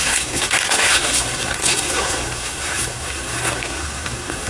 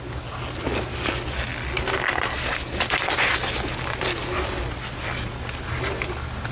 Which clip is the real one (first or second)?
second